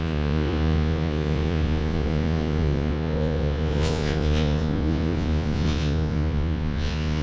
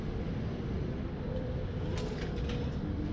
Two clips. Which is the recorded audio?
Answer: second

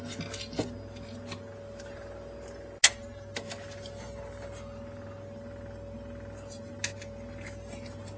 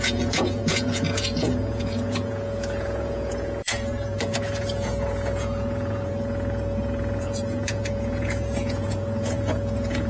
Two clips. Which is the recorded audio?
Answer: first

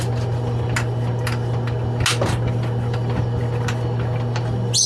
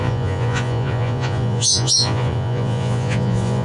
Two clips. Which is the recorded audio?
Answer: first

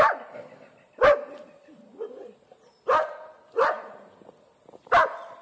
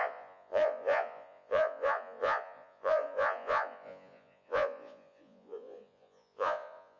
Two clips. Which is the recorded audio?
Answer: first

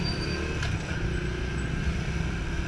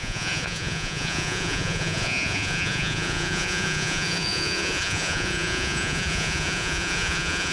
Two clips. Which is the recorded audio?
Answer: first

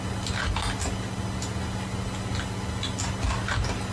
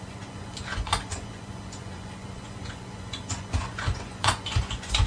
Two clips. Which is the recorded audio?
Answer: first